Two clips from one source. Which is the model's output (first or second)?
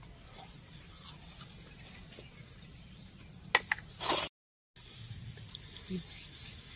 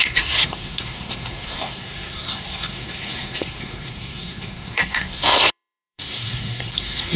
second